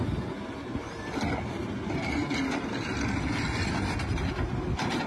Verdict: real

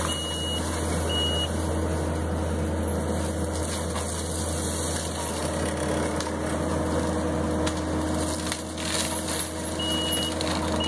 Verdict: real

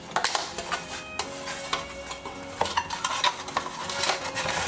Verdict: real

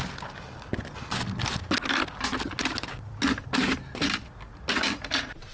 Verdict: real